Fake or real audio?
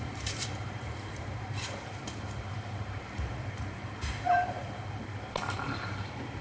fake